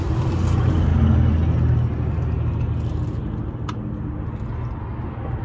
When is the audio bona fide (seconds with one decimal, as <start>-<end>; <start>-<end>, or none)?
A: 0.0-5.4